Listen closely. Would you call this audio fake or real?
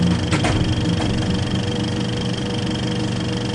real